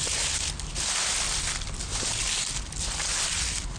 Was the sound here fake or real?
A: real